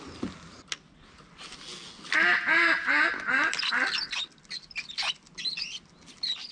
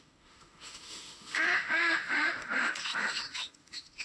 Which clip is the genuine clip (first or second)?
first